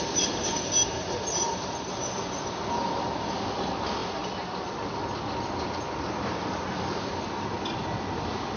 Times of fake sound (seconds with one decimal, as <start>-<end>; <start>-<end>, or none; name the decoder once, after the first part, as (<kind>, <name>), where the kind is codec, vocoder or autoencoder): none

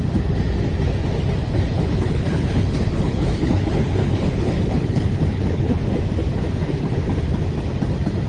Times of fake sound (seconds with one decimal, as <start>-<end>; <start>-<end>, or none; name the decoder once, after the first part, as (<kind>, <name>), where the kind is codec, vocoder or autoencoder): 1.4-5.8 (codec, HILCodec)